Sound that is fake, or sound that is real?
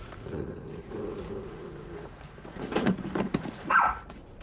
fake